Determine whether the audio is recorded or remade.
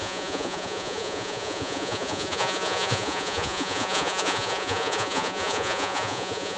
remade